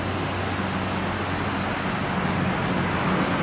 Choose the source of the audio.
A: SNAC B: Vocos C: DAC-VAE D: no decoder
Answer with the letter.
D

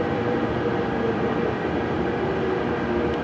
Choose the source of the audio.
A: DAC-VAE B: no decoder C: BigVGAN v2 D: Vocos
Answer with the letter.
B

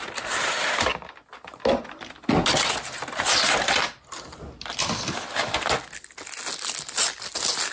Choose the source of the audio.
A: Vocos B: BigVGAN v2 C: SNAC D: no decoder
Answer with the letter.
D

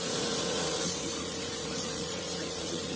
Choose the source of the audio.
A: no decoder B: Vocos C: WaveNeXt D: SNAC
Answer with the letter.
B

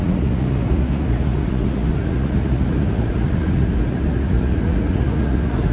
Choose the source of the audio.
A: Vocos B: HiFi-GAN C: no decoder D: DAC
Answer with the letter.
A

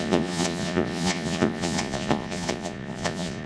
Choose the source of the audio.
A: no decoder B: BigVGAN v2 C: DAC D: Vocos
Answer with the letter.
D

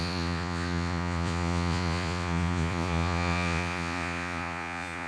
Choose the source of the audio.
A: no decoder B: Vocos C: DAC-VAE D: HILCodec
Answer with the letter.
B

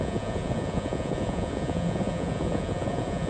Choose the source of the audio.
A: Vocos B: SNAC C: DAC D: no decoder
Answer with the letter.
A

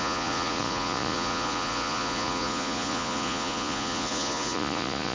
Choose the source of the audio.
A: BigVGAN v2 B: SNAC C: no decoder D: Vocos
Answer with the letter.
D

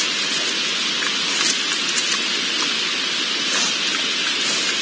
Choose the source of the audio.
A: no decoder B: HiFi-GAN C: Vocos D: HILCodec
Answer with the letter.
A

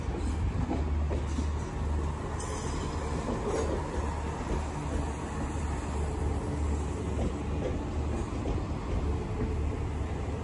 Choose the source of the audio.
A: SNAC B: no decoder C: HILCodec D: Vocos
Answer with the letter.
B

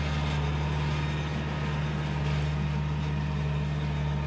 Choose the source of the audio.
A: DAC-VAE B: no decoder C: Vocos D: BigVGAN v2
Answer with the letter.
B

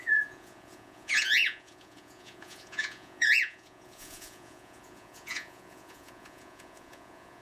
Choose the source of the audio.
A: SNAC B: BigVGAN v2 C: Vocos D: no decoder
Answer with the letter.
C